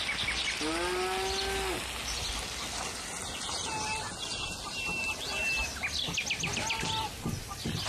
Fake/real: real